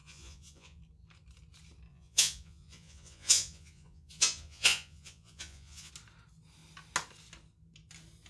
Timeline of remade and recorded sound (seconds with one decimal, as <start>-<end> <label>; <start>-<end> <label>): 0.0-0.8 remade; 0.8-1.9 recorded; 1.9-5.9 remade; 5.9-8.3 recorded

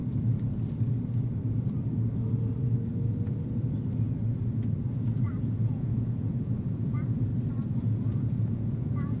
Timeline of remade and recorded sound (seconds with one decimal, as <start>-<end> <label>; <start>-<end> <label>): 0.0-4.9 recorded; 4.9-7.3 remade; 7.3-7.8 recorded; 7.8-9.2 remade

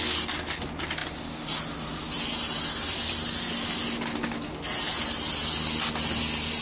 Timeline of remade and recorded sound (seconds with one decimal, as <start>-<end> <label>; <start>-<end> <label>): 0.0-6.6 recorded

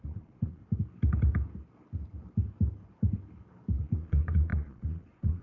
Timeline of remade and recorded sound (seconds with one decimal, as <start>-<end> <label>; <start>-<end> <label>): 0.0-0.6 remade; 0.6-3.8 recorded; 3.8-5.4 remade

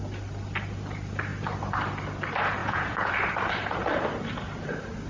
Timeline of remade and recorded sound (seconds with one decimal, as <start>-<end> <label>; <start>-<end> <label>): 0.0-2.6 recorded; 2.6-3.1 remade; 3.1-5.1 recorded